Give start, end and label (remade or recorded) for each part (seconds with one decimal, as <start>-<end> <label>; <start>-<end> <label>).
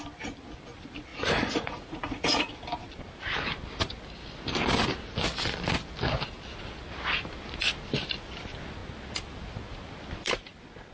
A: 0.0-1.1 recorded; 1.1-2.5 remade; 2.5-10.9 recorded